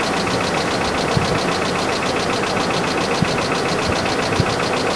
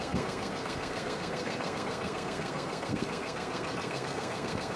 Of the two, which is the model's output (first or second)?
second